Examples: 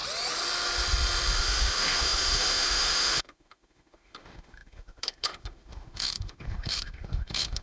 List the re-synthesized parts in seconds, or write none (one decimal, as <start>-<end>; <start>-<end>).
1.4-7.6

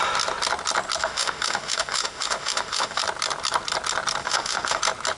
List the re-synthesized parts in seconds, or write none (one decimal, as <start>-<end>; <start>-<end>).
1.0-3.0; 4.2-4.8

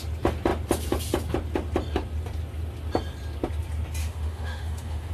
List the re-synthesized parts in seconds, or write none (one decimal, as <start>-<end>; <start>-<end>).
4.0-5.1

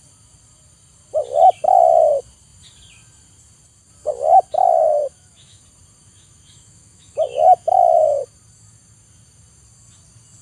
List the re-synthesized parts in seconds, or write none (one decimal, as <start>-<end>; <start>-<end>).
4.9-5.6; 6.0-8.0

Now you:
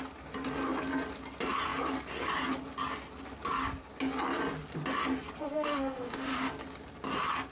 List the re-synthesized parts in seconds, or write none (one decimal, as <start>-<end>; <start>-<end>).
5.4-6.5

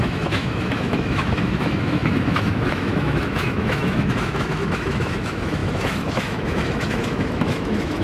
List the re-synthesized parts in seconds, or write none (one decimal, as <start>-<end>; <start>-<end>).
0.0-8.0

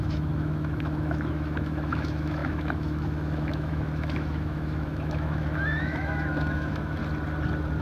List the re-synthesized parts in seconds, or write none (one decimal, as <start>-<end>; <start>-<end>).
0.0-7.0